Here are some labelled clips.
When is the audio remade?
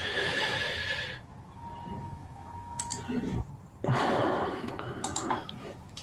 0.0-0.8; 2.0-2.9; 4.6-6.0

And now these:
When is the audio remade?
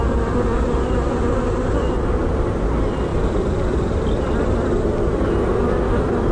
3.1-5.5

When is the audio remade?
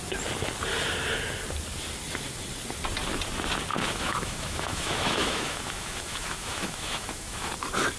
3.7-7.5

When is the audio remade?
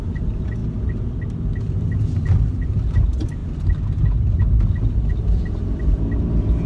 none